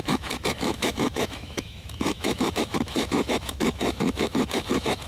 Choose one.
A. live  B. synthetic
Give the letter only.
B